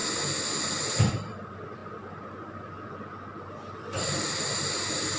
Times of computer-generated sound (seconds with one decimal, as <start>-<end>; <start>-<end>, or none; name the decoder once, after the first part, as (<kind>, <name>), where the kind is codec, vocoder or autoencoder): none